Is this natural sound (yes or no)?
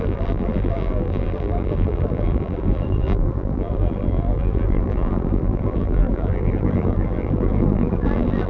no